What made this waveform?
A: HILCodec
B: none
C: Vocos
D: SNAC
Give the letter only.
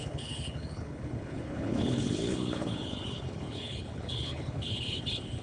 A